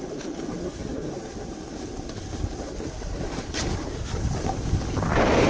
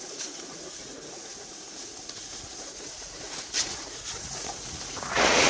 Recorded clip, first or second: first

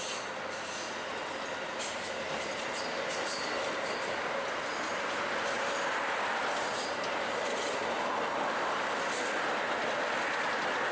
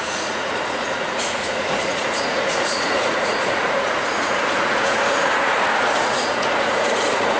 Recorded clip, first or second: first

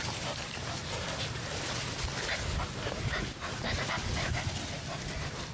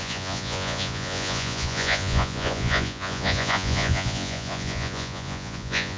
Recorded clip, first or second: first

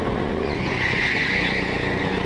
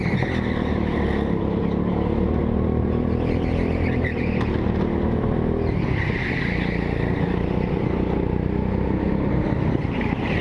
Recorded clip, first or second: second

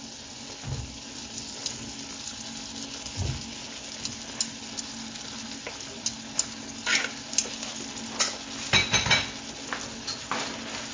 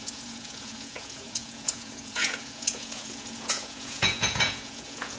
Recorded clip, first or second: first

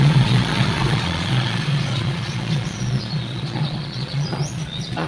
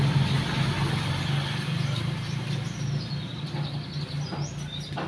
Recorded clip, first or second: second